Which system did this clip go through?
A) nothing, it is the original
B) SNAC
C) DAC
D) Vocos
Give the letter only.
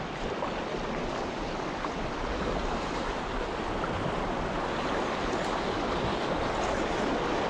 A